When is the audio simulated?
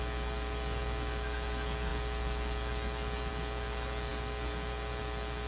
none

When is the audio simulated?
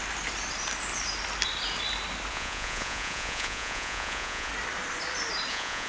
2.3-4.5 (vocoder, Vocos); 5.5-5.9